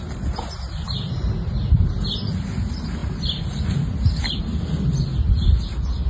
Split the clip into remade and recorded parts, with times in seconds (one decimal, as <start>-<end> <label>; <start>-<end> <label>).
0.0-6.1 recorded